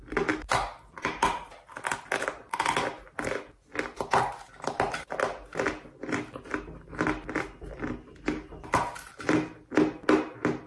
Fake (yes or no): no